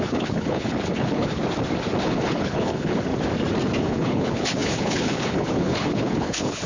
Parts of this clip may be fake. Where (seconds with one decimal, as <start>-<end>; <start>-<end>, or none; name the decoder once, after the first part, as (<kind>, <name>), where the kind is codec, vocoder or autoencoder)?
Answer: 0.0-1.4 (codec, HILCodec); 2.0-3.1; 3.8-6.7